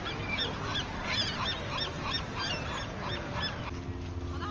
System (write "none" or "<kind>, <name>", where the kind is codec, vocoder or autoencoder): none